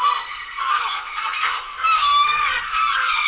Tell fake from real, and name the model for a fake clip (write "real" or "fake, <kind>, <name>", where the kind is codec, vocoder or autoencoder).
fake, codec, SNAC